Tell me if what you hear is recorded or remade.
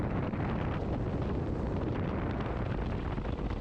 recorded